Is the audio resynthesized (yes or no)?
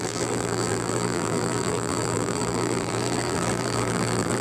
yes